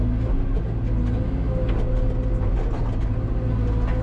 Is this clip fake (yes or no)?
no